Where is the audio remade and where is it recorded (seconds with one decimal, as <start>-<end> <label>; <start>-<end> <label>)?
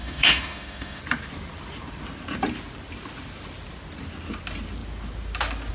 0.0-1.0 remade; 1.0-5.7 recorded